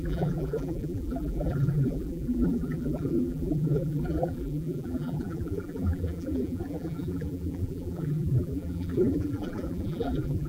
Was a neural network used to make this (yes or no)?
yes